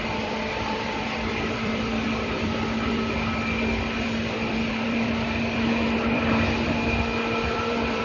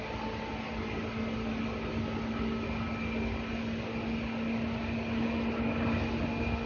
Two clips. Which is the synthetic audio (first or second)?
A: first